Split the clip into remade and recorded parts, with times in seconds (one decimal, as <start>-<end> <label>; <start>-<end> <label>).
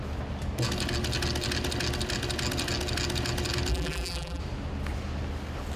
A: 0.0-3.7 recorded; 3.7-4.4 remade; 4.4-5.8 recorded